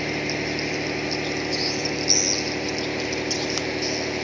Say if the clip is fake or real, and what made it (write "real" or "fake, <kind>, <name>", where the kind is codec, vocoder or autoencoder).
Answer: real